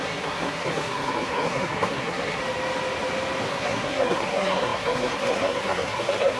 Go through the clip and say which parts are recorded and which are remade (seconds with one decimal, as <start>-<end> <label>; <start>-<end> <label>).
0.0-2.4 remade; 2.4-3.5 recorded; 3.5-6.4 remade